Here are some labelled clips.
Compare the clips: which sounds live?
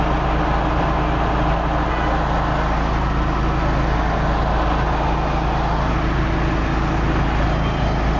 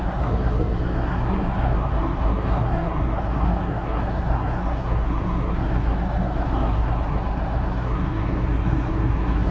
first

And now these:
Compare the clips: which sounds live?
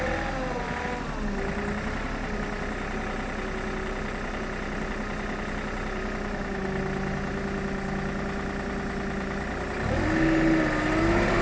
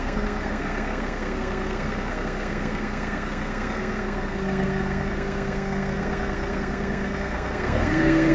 first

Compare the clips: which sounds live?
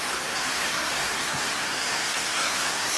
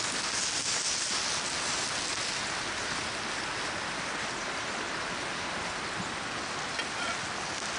second